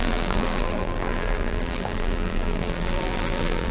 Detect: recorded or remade remade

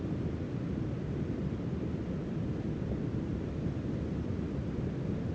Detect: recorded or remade recorded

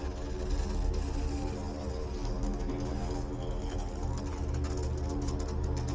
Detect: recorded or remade recorded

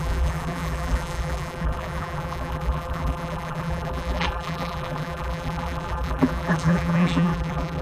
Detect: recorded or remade remade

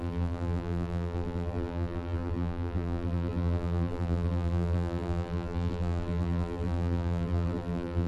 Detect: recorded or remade remade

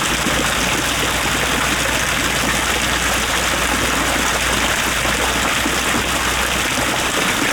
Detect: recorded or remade recorded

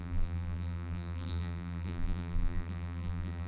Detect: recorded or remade remade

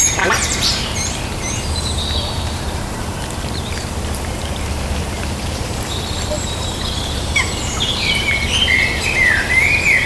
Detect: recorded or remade remade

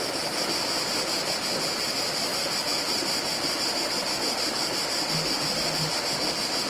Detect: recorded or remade recorded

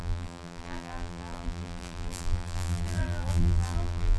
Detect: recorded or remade remade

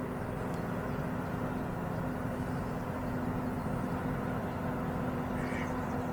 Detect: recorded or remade recorded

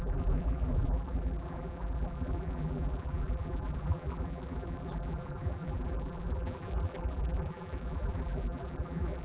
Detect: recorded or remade remade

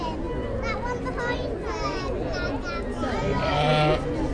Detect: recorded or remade recorded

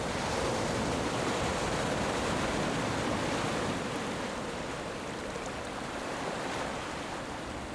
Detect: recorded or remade recorded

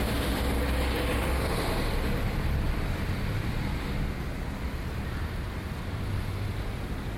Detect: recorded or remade remade